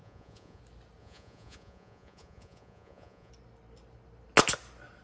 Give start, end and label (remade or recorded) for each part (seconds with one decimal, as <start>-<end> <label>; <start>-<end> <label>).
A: 0.0-0.6 remade; 0.6-1.0 recorded; 1.0-3.3 remade; 3.3-5.0 recorded